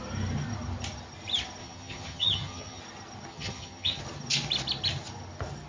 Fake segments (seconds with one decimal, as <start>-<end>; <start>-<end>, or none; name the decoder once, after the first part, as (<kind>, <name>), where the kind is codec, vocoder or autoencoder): 1.6-2.8 (vocoder, HiFi-GAN); 3.3-4.0